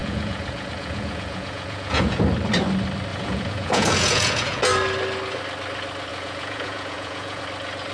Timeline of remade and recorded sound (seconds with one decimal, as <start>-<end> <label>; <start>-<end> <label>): 0.0-2.2 remade; 2.2-3.1 recorded; 3.1-4.6 remade; 4.6-6.1 recorded; 6.1-7.4 remade; 7.4-7.9 recorded